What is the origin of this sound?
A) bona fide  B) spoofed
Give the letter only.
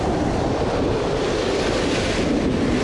A